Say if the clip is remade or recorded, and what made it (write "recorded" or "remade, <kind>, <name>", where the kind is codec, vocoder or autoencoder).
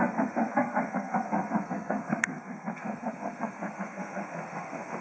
remade, codec, SNAC